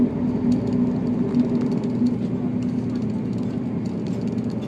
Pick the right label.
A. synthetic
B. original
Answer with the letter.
B